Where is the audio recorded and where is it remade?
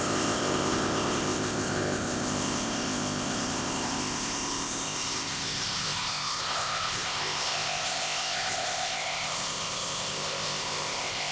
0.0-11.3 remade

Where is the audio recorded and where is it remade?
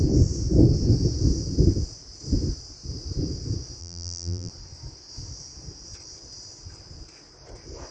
0.0-3.8 recorded; 3.8-4.5 remade; 4.5-7.9 recorded